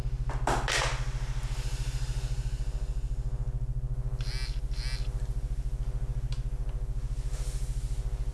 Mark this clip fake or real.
real